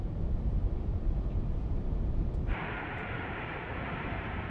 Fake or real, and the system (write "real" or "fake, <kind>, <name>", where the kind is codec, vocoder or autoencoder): fake, vocoder, BigVGAN v2